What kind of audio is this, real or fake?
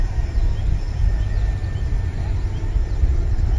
real